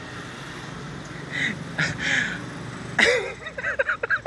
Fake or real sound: real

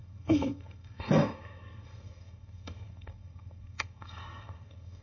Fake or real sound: fake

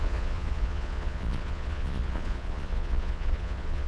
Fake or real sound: fake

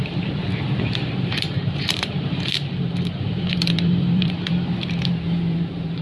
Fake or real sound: fake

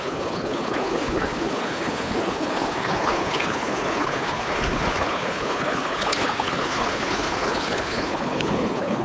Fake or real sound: fake